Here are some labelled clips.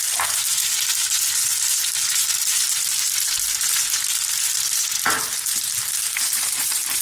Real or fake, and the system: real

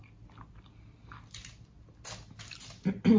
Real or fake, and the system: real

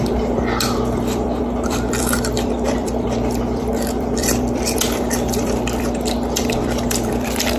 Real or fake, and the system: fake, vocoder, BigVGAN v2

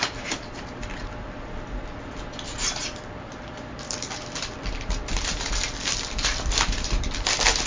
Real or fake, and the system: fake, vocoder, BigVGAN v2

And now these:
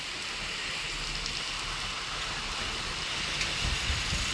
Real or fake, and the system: real